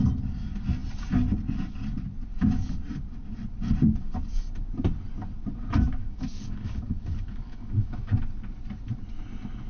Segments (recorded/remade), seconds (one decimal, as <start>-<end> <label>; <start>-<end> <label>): 0.0-6.0 recorded; 6.0-8.1 remade; 8.1-9.7 recorded